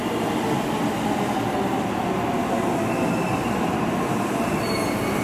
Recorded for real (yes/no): yes